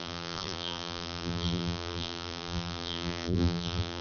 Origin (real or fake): fake